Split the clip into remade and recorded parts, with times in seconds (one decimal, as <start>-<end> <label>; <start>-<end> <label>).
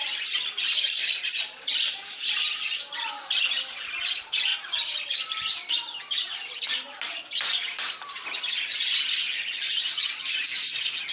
0.0-11.1 recorded